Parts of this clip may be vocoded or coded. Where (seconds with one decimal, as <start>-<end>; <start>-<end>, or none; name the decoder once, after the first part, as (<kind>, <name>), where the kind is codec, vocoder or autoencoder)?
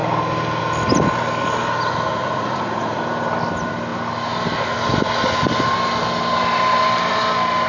2.1-3.0 (vocoder, Vocos)